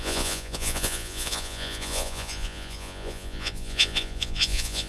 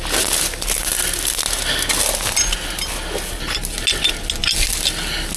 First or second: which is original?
second